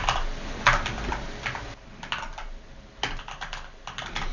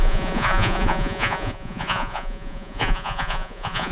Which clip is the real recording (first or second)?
first